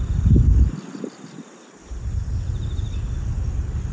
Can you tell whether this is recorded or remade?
recorded